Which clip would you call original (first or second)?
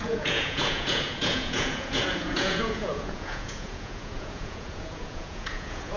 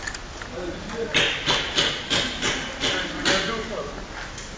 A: second